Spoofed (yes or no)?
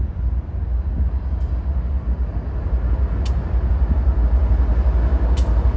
no